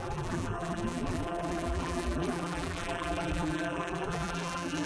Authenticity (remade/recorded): remade